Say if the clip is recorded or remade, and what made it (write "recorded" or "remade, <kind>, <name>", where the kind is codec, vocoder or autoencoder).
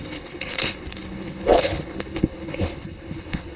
remade, codec, HILCodec